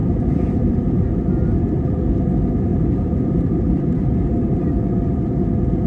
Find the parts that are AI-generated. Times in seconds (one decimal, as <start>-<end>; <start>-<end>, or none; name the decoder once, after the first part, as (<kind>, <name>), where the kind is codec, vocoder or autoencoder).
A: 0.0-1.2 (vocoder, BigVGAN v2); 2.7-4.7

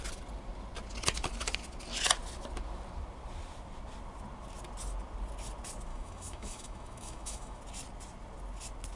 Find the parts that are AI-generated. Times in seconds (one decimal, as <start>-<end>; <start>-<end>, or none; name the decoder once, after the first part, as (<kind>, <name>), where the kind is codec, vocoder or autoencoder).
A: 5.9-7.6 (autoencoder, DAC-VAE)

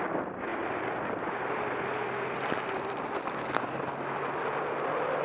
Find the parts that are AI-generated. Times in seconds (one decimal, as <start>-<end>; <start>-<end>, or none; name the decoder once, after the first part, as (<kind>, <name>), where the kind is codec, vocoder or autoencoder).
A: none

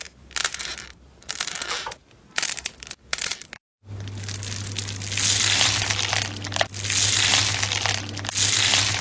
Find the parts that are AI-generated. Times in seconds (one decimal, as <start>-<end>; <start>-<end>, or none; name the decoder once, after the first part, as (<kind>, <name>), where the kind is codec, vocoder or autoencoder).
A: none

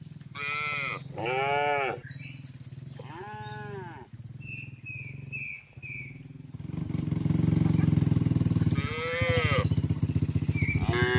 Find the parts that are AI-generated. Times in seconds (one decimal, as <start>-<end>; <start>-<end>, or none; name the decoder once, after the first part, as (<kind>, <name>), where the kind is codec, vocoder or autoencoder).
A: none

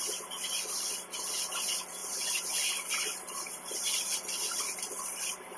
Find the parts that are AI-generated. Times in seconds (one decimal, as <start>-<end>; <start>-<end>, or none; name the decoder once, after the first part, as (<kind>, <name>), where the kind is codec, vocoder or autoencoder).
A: 2.0-5.6 (vocoder, BigVGAN v2)